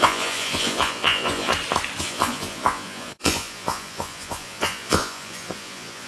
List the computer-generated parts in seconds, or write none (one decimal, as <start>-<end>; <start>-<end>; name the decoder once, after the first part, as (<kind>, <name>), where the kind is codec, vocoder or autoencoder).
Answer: 0.0-1.5 (vocoder, Vocos); 2.0-6.1